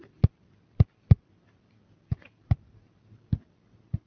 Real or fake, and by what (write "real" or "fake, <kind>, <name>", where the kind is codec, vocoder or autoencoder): real